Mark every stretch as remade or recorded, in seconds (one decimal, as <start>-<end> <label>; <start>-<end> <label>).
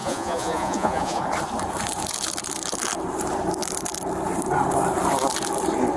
0.0-1.2 remade; 1.2-6.0 recorded